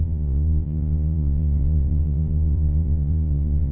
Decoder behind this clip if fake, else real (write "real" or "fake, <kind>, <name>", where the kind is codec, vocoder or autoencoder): fake, vocoder, Vocos